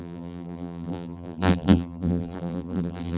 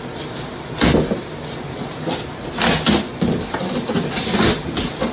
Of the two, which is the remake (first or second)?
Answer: first